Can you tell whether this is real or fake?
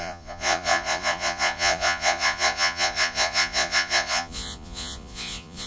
fake